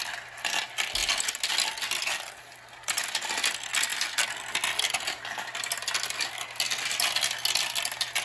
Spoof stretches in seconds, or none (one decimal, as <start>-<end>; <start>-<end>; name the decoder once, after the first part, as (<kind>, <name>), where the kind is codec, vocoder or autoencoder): none